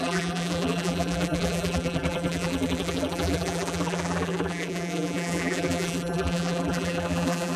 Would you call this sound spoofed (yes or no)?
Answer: yes